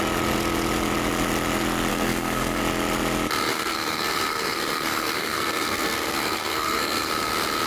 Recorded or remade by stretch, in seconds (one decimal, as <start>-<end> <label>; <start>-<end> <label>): 0.0-1.9 recorded; 1.9-2.6 remade; 2.6-3.5 recorded; 3.5-7.1 remade; 7.1-7.7 recorded